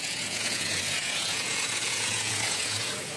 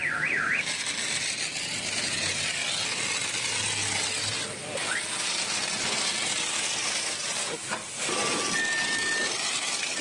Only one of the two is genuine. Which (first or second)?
second